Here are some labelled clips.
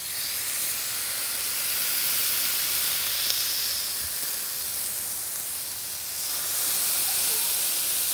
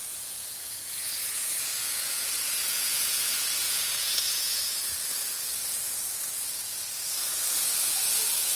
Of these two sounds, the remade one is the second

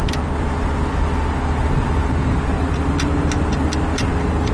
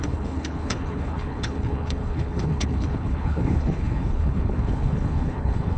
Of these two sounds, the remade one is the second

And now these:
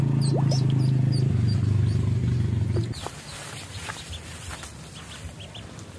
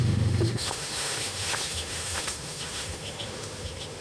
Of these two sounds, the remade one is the second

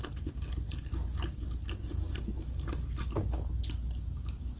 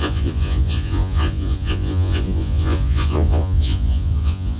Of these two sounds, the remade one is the second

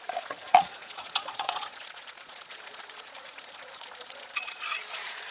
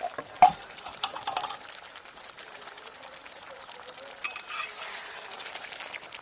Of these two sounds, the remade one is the first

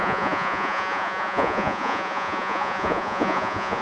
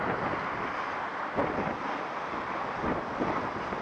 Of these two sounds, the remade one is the first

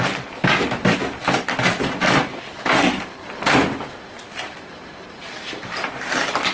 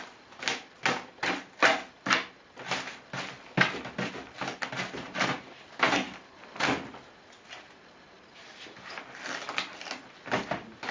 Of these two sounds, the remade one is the first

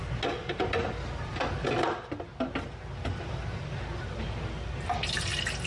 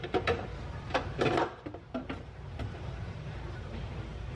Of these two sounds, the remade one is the second